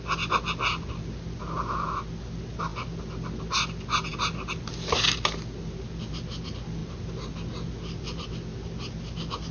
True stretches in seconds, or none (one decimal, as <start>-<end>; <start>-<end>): 0.0-9.5